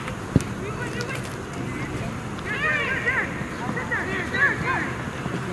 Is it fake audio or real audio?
real